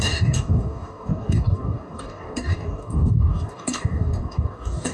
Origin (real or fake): fake